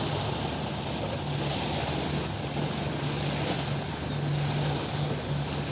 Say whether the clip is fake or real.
real